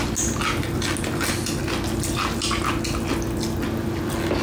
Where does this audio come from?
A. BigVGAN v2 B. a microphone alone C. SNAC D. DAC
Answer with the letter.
B